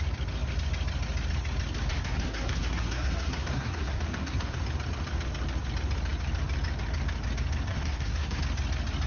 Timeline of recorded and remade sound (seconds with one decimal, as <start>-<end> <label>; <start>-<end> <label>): 0.0-1.9 recorded; 1.9-4.6 remade; 4.6-7.7 recorded; 7.7-8.4 remade; 8.4-9.1 recorded